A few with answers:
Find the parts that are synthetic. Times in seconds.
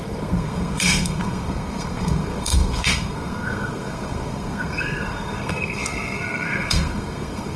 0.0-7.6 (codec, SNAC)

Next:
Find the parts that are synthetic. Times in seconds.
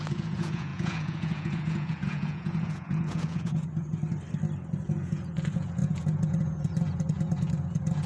0.0-4.0 (vocoder, Vocos); 4.8-8.1